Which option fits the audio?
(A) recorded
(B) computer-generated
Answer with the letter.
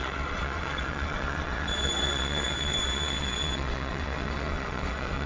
B